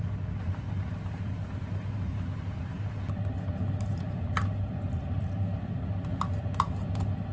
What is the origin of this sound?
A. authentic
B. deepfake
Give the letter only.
A